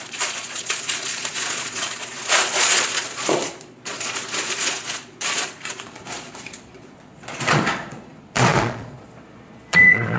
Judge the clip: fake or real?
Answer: fake